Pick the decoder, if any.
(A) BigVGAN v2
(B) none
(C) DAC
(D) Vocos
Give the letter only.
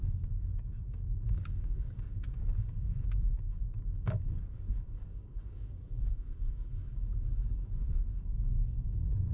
C